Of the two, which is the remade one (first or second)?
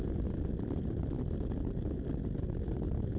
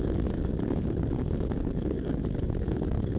second